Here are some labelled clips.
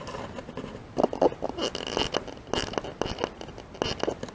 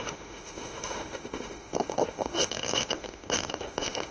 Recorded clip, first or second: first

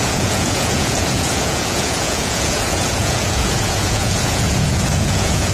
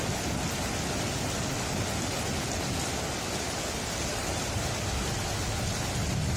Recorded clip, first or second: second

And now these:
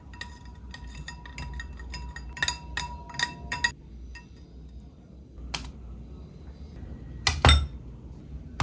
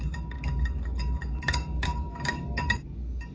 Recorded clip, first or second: first